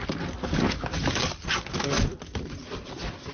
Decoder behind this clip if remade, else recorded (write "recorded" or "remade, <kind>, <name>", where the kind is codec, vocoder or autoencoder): recorded